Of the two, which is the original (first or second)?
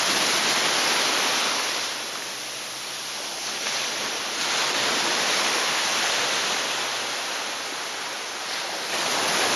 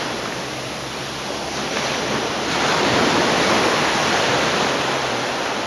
first